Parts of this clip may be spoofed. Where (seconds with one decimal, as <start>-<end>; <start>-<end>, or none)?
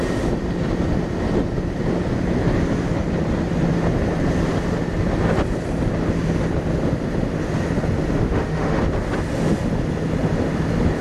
8.2-8.8